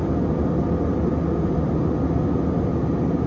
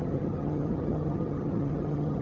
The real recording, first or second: first